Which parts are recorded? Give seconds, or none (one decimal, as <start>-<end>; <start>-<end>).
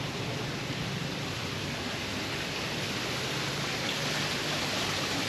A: 1.4-4.6